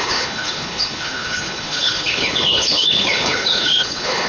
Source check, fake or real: fake